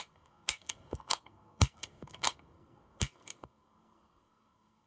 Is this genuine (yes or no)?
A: no